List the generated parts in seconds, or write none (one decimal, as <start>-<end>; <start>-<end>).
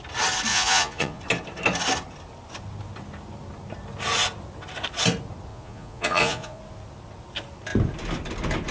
0.5-1.2; 5.5-6.6